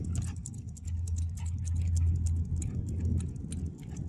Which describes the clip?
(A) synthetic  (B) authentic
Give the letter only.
B